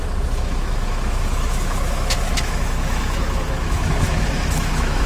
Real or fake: fake